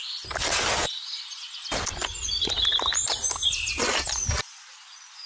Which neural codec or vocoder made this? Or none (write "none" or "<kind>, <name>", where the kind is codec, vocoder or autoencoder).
none